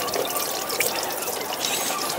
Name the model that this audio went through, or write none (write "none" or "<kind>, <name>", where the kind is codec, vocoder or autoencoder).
none